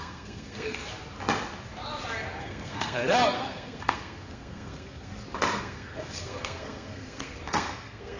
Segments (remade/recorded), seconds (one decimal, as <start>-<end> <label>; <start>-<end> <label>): 0.0-0.8 remade; 0.8-2.4 recorded; 2.4-5.1 remade; 5.1-5.6 recorded; 5.6-8.2 remade